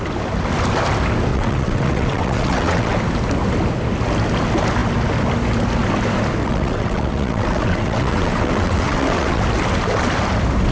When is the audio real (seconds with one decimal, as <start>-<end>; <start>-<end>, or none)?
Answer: 0.0-1.3; 2.9-6.4; 9.4-10.7